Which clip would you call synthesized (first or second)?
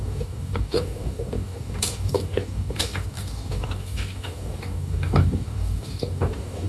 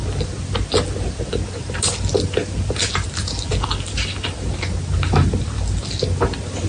first